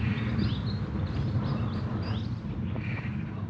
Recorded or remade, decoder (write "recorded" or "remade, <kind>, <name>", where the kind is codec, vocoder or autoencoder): recorded